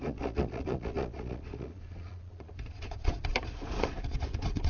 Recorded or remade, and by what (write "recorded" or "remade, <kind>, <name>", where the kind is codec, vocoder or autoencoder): remade, vocoder, Vocos